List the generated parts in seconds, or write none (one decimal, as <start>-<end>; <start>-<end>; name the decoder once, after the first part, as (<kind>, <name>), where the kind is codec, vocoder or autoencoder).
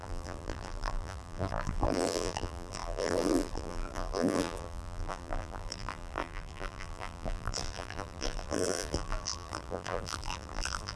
0.0-11.0 (vocoder, BigVGAN v2)